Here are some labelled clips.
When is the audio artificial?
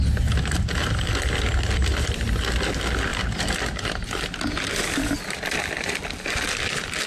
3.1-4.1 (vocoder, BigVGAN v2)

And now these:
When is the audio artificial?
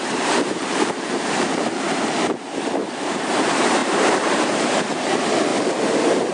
0.0-6.3 (vocoder, BigVGAN v2)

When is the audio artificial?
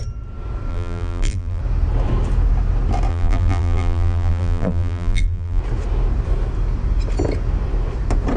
0.7-1.6 (vocoder, BigVGAN v2); 3.1-5.6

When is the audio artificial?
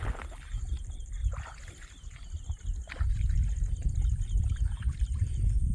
0.0-1.2 (vocoder, BigVGAN v2); 4.6-5.7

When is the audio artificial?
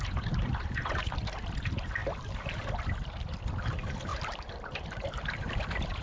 4.1-5.4 (vocoder, BigVGAN v2)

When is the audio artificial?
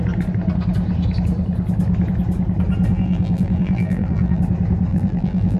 2.9-4.4 (vocoder, BigVGAN v2); 4.9-5.6